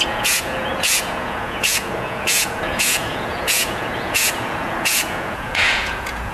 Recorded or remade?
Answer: remade